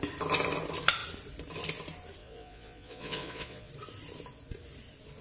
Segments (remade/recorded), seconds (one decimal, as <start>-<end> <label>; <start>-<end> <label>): 0.0-2.2 recorded; 2.2-3.7 remade; 3.7-5.2 recorded